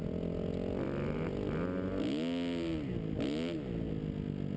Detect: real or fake real